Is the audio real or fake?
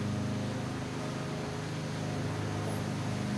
real